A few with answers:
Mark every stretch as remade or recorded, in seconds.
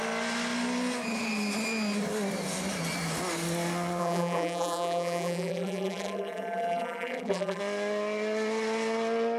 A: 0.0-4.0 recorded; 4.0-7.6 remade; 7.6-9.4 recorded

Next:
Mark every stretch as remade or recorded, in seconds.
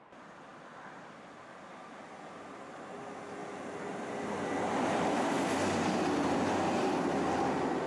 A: 0.0-7.9 recorded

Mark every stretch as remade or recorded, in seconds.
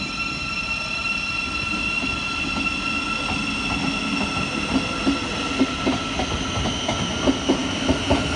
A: 0.0-8.4 recorded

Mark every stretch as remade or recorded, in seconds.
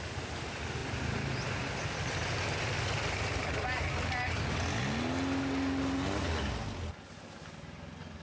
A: 0.0-8.2 recorded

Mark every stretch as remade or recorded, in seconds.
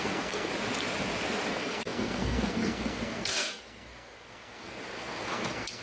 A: 0.0-0.5 remade; 0.5-1.5 recorded; 1.5-5.8 remade